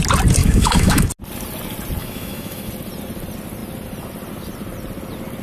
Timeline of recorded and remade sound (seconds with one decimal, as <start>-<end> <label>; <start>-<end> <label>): 0.0-0.4 recorded; 0.4-1.1 remade; 1.1-2.0 recorded; 2.0-2.7 remade; 2.7-5.4 recorded